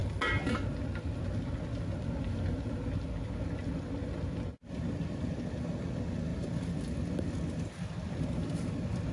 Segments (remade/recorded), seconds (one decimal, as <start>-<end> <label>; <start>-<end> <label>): 0.0-6.3 recorded; 6.3-6.8 remade; 6.8-9.1 recorded